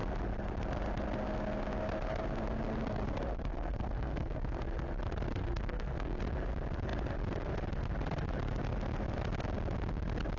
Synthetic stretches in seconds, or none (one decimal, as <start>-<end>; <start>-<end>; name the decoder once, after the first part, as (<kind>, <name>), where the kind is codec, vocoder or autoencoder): 3.5-4.6 (codec, SNAC); 5.4-6.2